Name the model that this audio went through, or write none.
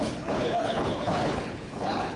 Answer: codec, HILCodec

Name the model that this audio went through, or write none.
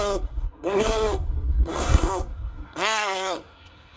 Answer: codec, SNAC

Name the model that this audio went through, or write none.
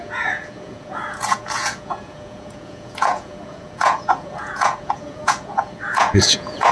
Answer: vocoder, Vocos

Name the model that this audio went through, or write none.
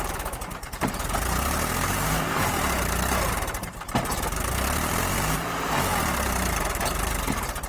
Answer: vocoder, BigVGAN v2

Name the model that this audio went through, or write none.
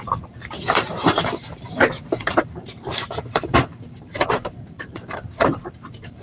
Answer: vocoder, BigVGAN v2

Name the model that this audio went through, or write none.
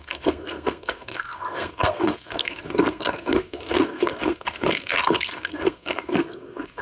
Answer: codec, SNAC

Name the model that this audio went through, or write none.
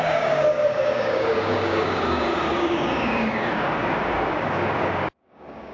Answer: codec, DAC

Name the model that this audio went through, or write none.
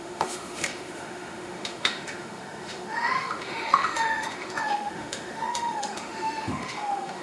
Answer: autoencoder, DAC-VAE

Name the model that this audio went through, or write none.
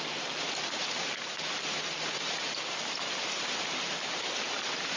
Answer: vocoder, BigVGAN v2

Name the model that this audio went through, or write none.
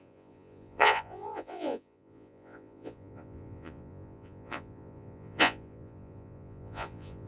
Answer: vocoder, Vocos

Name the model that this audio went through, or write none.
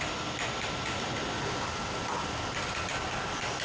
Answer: none